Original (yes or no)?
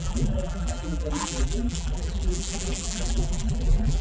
no